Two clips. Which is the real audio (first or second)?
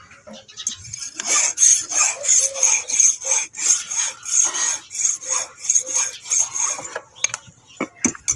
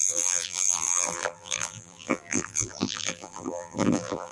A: first